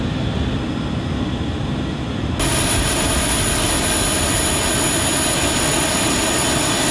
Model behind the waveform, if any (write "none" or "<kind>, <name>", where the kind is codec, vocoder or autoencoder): none